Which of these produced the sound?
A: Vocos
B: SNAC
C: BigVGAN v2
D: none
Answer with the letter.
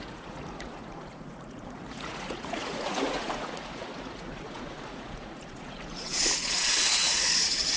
A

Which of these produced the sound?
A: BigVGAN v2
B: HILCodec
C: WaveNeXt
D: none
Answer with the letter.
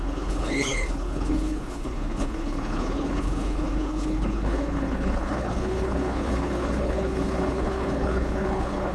B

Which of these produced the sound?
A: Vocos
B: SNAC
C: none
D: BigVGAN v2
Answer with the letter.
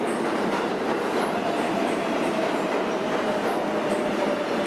D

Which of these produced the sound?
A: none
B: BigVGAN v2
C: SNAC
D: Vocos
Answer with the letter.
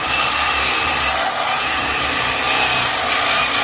A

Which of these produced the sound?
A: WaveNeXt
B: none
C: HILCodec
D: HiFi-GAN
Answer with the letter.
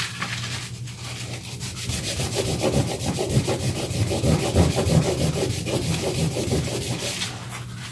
B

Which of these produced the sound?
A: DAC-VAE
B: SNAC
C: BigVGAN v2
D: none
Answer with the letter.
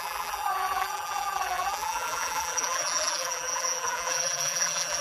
C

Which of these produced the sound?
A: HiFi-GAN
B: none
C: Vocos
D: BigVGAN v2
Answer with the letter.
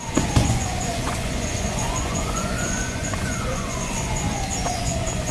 C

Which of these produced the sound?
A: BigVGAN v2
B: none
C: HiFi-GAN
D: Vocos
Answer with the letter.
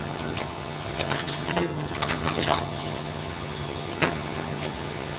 C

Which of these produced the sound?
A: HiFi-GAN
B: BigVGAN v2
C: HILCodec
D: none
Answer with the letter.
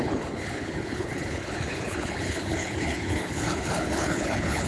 C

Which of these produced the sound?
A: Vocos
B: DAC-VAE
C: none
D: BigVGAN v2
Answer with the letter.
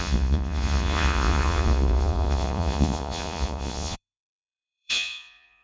A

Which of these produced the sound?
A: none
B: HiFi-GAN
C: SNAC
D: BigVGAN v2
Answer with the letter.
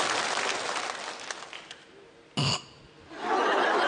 A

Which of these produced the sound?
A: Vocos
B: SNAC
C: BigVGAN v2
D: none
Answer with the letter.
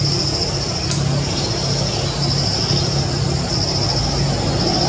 D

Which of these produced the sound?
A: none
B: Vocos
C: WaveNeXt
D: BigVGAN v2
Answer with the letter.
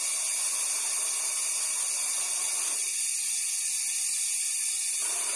A